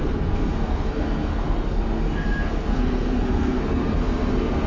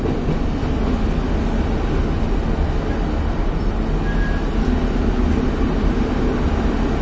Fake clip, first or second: first